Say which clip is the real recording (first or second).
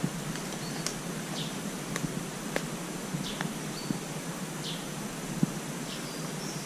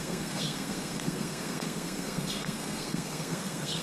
first